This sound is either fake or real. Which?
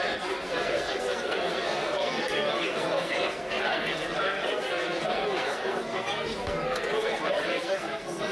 fake